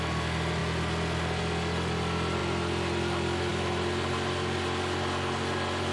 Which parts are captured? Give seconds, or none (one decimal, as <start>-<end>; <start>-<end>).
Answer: 0.0-5.9